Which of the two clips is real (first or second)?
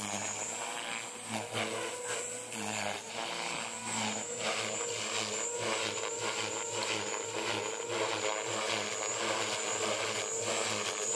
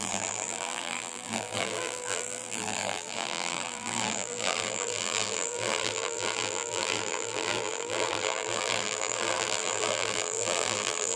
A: first